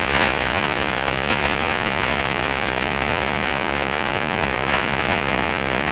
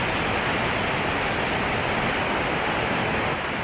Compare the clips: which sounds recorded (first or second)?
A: second